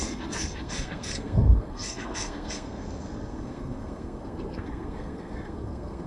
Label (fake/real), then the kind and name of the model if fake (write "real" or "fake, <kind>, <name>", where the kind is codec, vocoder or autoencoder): fake, codec, SNAC